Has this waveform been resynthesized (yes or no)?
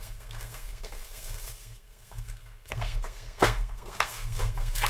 yes